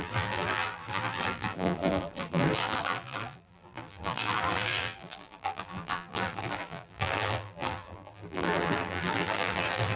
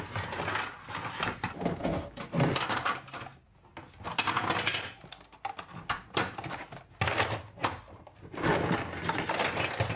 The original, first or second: second